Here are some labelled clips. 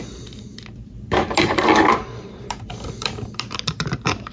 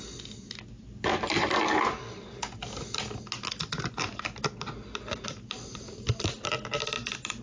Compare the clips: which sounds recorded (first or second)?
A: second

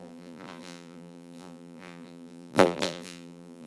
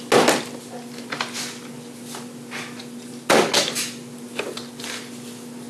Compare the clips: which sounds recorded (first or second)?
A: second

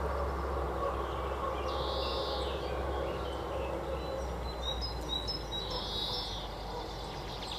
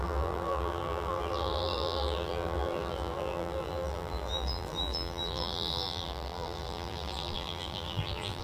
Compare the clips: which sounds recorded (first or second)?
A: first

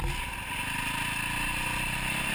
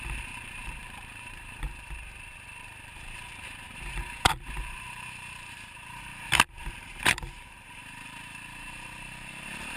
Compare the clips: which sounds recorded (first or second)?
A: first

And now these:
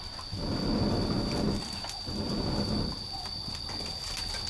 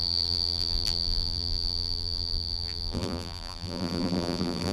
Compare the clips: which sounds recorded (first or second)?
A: first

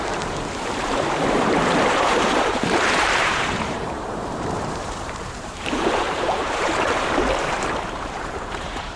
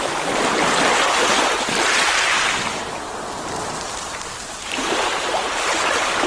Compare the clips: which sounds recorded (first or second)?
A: second